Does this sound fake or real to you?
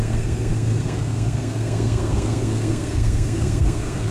fake